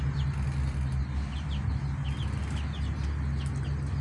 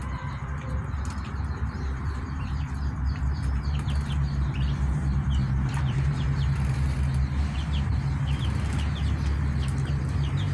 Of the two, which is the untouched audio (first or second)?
first